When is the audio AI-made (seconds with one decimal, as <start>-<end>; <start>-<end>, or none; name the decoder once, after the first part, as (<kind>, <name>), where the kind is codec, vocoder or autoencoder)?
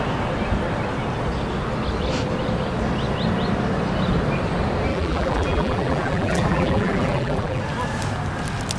4.9-7.6 (vocoder, BigVGAN v2)